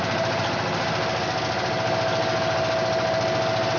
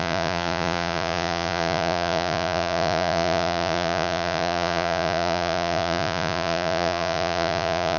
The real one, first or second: first